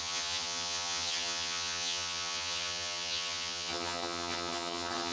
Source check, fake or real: fake